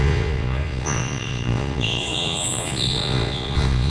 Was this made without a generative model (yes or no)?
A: no